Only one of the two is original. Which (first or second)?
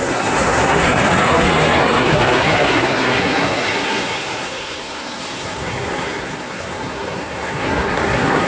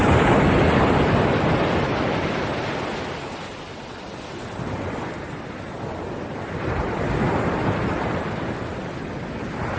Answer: second